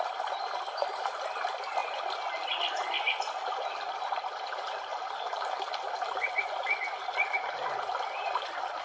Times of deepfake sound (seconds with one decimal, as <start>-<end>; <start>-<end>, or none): none